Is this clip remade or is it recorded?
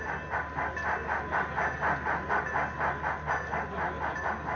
recorded